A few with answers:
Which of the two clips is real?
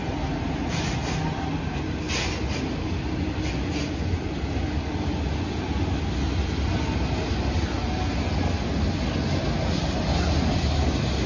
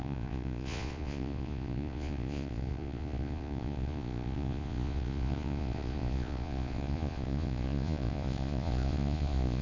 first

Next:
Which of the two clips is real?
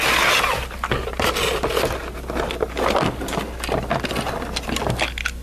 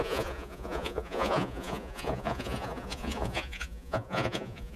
first